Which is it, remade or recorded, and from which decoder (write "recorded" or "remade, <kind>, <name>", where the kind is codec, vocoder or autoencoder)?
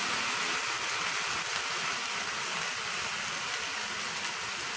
recorded